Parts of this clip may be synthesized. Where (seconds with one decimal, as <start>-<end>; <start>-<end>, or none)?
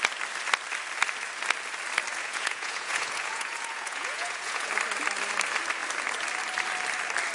2.1-4.7